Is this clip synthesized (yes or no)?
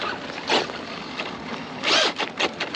no